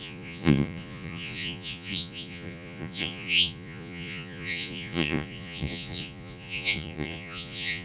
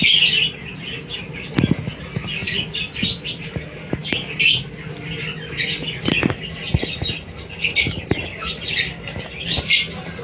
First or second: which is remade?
first